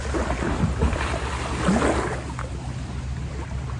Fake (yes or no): no